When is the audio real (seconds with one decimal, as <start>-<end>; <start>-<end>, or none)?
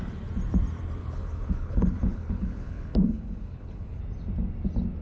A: 0.0-1.0; 4.0-5.0